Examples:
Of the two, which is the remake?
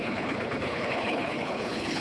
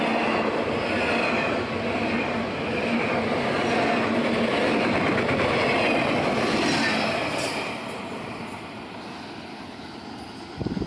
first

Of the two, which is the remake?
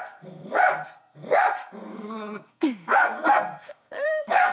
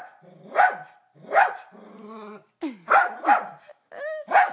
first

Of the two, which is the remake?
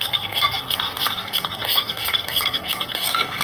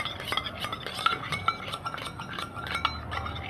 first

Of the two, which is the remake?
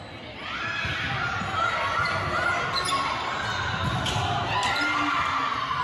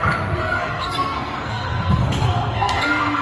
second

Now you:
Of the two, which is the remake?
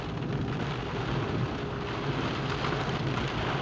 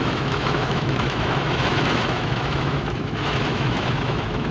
second